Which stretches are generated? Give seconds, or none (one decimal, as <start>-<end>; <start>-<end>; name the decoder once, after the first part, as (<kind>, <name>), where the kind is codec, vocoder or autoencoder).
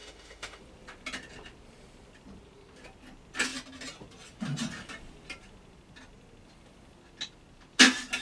0.0-0.6 (autoencoder, DAC-VAE)